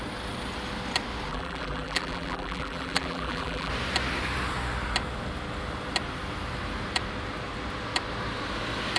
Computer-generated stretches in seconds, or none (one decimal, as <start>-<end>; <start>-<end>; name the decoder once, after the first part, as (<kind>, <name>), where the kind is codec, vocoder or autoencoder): 1.3-3.7 (vocoder, BigVGAN v2)